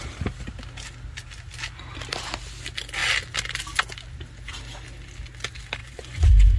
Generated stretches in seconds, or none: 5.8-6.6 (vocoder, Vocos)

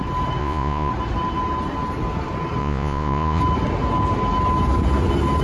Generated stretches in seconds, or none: 0.4-0.9 (vocoder, Vocos); 2.6-3.4

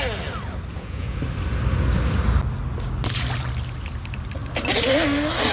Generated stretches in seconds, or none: 0.7-1.2 (vocoder, Vocos)

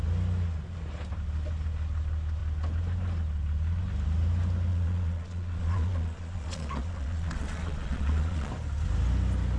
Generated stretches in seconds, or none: 4.7-8.5 (vocoder, Vocos)